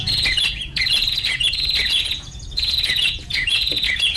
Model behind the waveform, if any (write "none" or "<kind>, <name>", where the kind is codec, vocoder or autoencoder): vocoder, Vocos